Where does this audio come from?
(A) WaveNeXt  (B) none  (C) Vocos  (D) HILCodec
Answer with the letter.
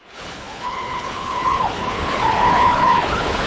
D